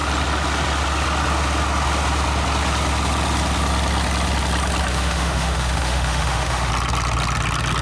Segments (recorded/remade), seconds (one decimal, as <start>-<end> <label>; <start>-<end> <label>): 0.0-4.9 recorded; 4.9-6.7 remade; 6.7-7.8 recorded